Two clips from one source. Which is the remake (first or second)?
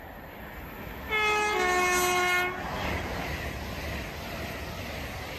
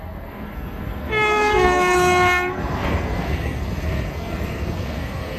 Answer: second